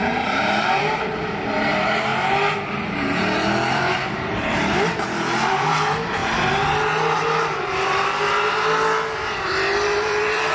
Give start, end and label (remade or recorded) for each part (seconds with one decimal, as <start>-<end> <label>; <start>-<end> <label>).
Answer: 0.0-2.1 remade; 2.1-3.7 recorded; 3.7-6.2 remade; 6.2-9.7 recorded; 9.7-10.5 remade